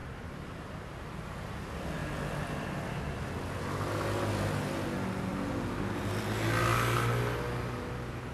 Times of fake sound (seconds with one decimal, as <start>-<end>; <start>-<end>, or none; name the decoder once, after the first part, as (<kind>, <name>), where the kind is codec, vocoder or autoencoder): 0.0-0.9 (vocoder, BigVGAN v2)